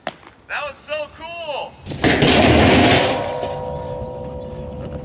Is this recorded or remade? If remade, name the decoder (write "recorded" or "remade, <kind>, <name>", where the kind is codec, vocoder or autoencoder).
recorded